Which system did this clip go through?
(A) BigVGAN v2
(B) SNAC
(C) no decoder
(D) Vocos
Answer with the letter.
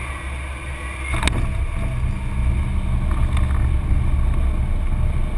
C